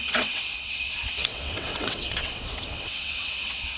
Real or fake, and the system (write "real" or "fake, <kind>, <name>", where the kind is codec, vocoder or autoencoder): fake, vocoder, WaveNeXt